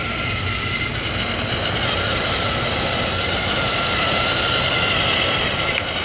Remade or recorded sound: recorded